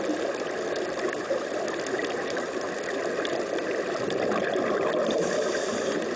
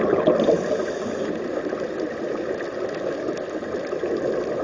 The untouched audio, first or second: second